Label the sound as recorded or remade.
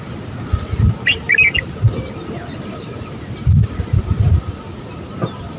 recorded